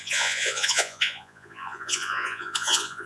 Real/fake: fake